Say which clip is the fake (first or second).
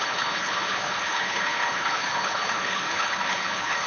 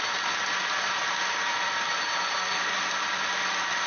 first